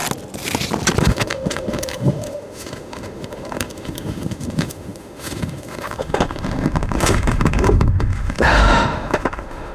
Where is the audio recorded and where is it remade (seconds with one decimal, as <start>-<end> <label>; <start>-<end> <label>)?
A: 0.0-1.0 recorded; 1.0-9.7 remade